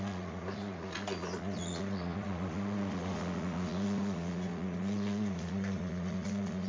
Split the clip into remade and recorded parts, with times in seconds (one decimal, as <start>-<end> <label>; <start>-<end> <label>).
0.0-6.7 remade